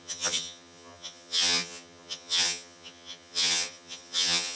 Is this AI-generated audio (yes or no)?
yes